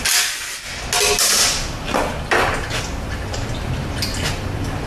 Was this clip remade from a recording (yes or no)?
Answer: no